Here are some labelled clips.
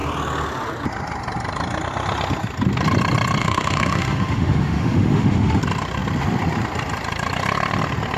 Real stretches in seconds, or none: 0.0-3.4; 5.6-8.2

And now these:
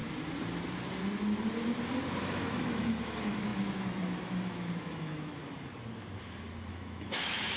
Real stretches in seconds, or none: 0.0-2.2; 5.4-6.7

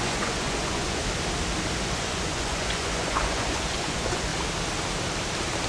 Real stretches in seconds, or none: 1.0-1.8; 4.3-5.7

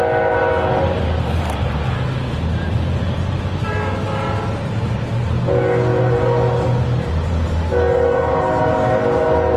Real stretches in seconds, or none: 0.0-9.6

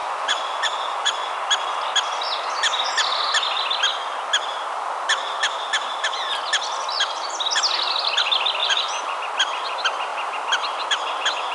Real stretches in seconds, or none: 1.3-8.6; 9.2-11.5

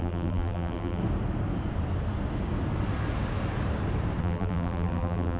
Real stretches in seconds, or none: 1.0-4.2